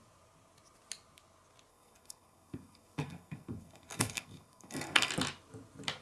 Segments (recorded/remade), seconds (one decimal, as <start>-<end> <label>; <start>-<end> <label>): 0.0-1.7 recorded; 1.7-5.1 remade; 5.1-6.0 recorded